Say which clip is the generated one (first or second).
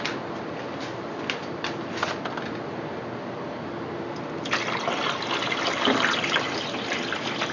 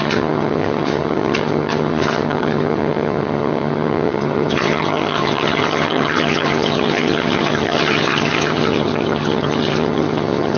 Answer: second